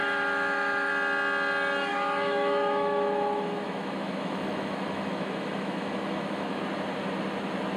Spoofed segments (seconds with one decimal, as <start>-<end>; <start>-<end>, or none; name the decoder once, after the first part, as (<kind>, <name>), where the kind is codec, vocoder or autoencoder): 0.0-0.9 (autoencoder, DAC-VAE); 1.9-6.6